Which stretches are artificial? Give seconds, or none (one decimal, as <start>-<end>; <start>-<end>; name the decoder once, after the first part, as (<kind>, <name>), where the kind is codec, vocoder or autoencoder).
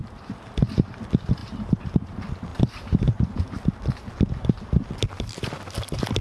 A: 0.0-0.7 (vocoder, BigVGAN v2); 1.4-2.1; 2.5-3.5